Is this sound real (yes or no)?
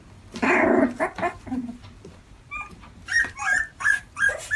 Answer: no